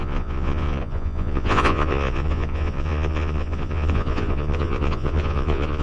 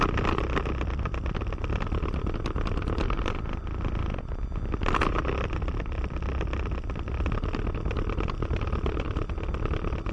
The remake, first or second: first